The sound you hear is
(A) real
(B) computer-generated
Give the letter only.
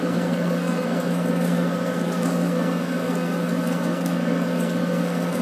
B